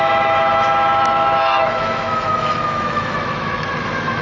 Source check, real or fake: fake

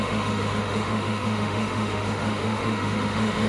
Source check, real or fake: fake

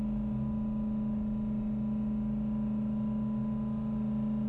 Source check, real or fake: real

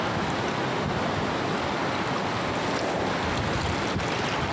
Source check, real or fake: real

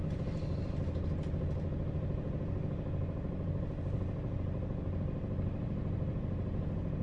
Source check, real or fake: real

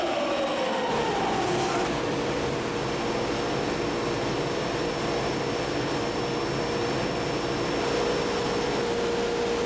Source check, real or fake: real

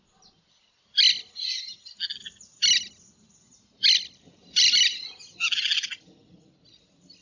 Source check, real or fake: real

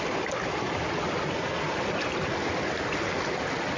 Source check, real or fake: real